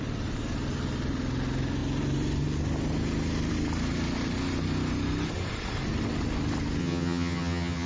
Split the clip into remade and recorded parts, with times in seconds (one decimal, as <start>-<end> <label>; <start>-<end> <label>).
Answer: 0.0-6.8 recorded; 6.8-7.9 remade